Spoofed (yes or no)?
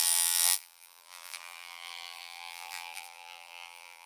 yes